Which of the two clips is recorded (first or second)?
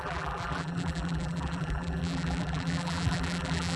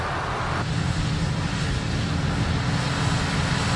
second